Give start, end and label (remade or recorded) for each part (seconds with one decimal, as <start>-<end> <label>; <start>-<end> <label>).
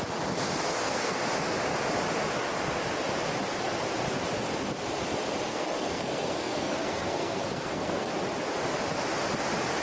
0.0-0.7 recorded; 0.7-1.2 remade; 1.2-5.5 recorded; 5.5-8.1 remade; 8.1-9.8 recorded